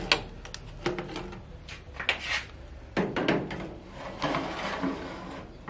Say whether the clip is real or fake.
real